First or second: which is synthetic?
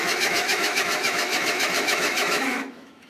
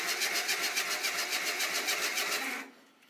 first